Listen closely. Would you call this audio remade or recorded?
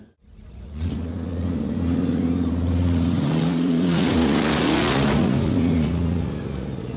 remade